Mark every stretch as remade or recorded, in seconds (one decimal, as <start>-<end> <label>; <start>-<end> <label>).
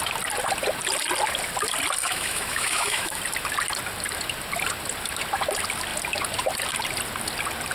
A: 0.0-2.0 recorded; 2.0-3.2 remade; 3.2-7.7 recorded